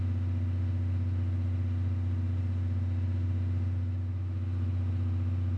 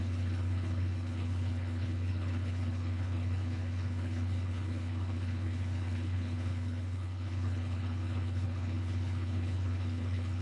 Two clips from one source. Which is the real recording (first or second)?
first